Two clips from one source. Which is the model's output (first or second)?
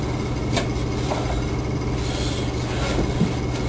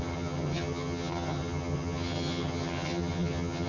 second